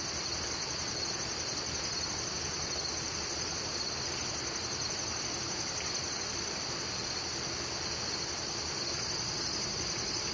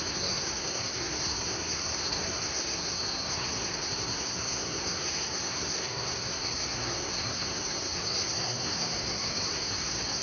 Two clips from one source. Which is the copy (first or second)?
second